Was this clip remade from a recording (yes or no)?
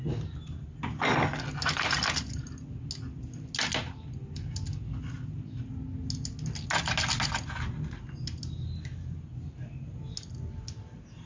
no